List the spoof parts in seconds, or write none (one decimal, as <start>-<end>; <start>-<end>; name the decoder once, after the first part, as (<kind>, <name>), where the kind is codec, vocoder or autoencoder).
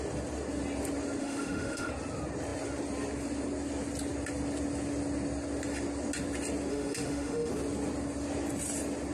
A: 1.2-1.9 (autoencoder, DAC-VAE); 6.7-7.5